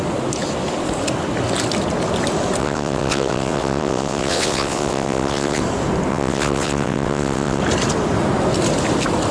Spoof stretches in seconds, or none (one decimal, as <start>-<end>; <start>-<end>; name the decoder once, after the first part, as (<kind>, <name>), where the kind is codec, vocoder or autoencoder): 2.6-5.6 (vocoder, WaveNeXt); 6.1-7.6